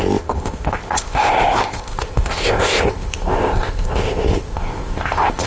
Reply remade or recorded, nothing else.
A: remade